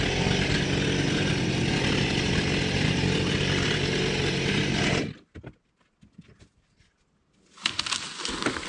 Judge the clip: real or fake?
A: real